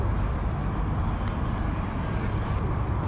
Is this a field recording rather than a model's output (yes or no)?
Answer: yes